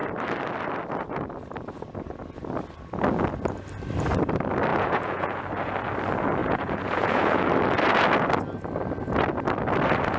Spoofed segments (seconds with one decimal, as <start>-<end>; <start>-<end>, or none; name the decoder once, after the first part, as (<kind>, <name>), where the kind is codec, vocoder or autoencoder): 4.7-5.4 (vocoder, Vocos); 6.4-7.5